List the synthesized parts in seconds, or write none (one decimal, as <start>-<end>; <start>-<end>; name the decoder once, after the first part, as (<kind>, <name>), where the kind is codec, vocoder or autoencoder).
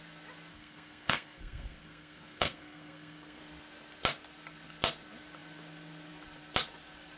0.5-3.4 (codec, SNAC)